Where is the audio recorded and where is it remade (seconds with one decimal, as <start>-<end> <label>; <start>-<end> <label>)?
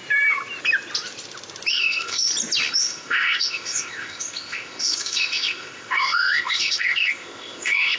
0.0-1.7 recorded; 1.7-2.3 remade; 2.3-2.8 recorded; 2.8-8.0 remade